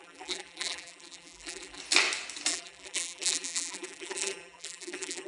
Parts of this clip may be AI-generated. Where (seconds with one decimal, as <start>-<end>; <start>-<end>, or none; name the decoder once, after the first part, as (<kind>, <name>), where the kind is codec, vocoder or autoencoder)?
0.0-1.8 (vocoder, BigVGAN v2); 2.5-5.3